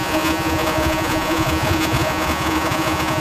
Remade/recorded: remade